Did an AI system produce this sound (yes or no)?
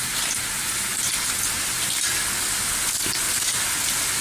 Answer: no